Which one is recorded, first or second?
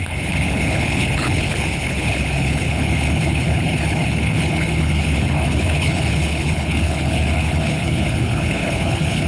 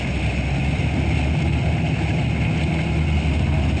second